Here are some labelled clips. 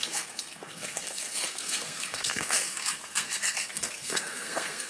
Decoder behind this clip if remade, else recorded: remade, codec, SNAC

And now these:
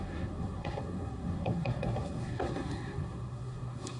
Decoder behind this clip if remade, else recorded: remade, codec, SNAC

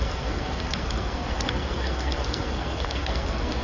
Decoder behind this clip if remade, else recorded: remade, codec, SNAC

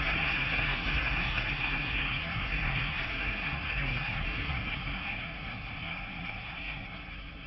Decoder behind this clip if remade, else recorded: remade, codec, SNAC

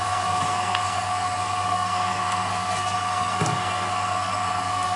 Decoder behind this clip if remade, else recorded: remade, codec, SNAC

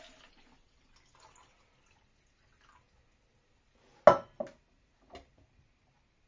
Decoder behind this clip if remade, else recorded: recorded